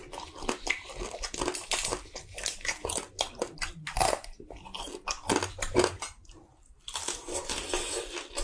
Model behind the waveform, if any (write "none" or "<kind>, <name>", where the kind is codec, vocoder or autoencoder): none